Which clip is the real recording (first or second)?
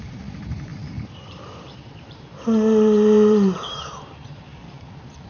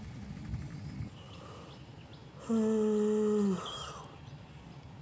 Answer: second